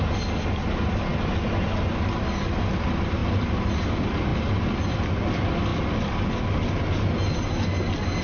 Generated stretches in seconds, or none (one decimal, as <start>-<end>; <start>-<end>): none